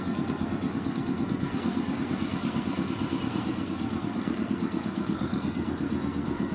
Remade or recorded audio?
remade